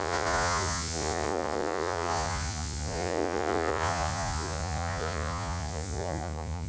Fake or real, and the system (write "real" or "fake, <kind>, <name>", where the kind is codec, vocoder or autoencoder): fake, vocoder, Vocos